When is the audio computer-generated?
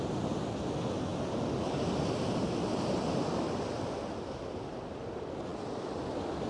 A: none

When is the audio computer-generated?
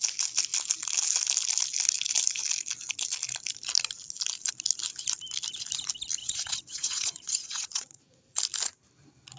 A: 6.2-8.0 (vocoder, Vocos)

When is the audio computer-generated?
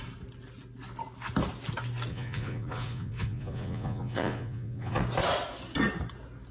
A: 2.1-5.0 (vocoder, Vocos)